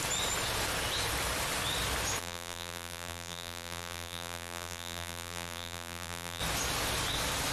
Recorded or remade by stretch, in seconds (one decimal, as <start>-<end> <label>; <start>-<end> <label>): 0.0-2.2 recorded; 2.2-6.4 remade; 6.4-7.5 recorded

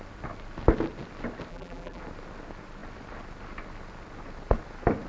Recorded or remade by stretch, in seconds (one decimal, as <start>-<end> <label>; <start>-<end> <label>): 0.0-1.5 recorded; 1.5-2.0 remade; 2.0-5.1 recorded

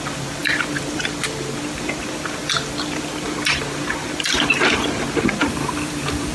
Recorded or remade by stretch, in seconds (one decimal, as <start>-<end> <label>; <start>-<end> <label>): 0.0-0.4 recorded; 0.4-1.0 remade; 1.0-5.4 recorded; 5.4-6.3 remade

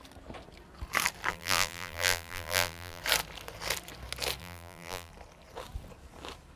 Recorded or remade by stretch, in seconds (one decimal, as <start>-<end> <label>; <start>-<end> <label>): 0.0-1.3 recorded; 1.3-3.0 remade; 3.0-4.4 recorded; 4.4-5.1 remade; 5.1-6.6 recorded

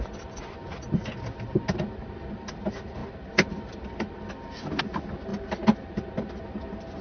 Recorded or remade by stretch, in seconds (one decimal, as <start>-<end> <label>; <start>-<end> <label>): 0.0-7.0 recorded

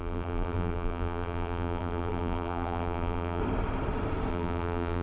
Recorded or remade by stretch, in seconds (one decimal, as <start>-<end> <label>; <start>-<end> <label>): 0.0-3.4 remade; 3.4-4.3 recorded; 4.3-5.0 remade

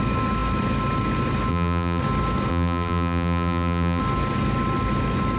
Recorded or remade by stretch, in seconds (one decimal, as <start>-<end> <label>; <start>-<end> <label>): 0.0-1.5 recorded; 1.5-2.0 remade; 2.0-2.5 recorded; 2.5-4.0 remade; 4.0-5.4 recorded

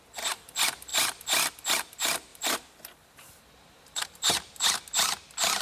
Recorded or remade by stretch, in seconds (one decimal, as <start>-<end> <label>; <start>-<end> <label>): 0.0-2.3 recorded; 2.3-4.6 remade; 4.6-5.6 recorded